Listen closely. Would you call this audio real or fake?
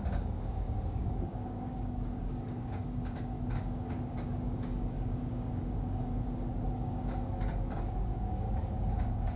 fake